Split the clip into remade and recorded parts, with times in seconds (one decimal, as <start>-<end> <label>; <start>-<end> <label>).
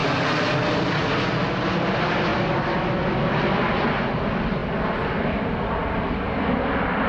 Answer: 0.0-7.1 recorded